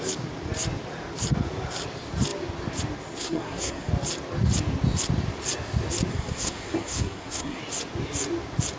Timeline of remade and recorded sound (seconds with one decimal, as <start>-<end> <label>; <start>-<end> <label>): 0.0-3.2 recorded; 3.2-3.9 remade; 3.9-6.1 recorded; 6.1-7.6 remade; 7.6-8.8 recorded